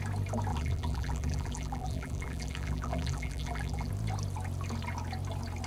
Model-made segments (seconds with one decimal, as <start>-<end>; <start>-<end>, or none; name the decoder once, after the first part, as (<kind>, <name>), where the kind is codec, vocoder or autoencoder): 0.5-3.9 (vocoder, BigVGAN v2)